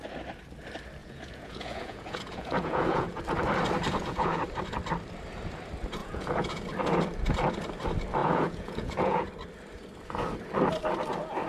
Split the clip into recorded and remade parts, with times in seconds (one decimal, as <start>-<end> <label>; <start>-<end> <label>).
0.0-1.0 recorded; 1.0-3.2 remade; 3.2-3.9 recorded; 3.9-4.4 remade; 4.4-6.0 recorded; 6.0-6.6 remade; 6.6-8.2 recorded; 8.2-9.3 remade; 9.3-11.5 recorded